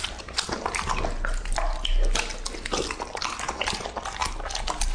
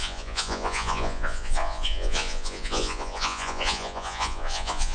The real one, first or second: first